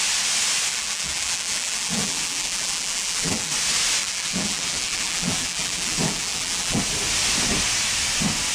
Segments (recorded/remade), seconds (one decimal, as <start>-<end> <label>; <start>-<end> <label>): 0.0-0.7 recorded; 0.7-3.5 remade; 3.5-4.0 recorded; 4.0-6.8 remade; 6.8-8.5 recorded